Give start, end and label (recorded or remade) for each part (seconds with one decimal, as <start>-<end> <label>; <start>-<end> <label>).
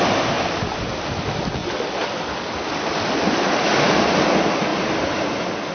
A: 0.0-4.7 recorded; 4.7-5.3 remade; 5.3-5.7 recorded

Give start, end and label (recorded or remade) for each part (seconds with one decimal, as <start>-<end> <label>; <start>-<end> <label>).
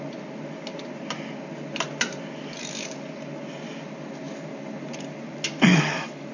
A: 0.0-5.7 recorded; 5.7-6.3 remade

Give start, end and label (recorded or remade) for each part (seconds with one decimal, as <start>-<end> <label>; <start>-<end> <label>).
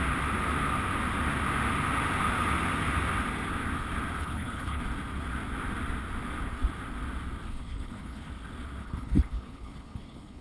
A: 0.0-4.2 recorded; 4.2-4.8 remade; 4.8-7.5 recorded; 7.5-8.3 remade; 8.3-8.8 recorded; 8.8-10.4 remade